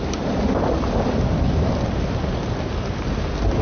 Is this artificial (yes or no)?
no